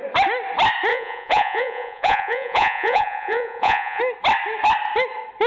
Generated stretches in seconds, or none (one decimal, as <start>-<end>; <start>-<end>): 0.9-4.0